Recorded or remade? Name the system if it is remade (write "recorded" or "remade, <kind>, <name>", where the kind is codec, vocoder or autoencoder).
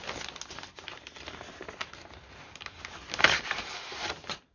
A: recorded